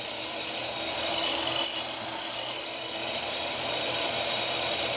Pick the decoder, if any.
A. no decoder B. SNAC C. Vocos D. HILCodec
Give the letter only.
A